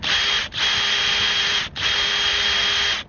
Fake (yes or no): no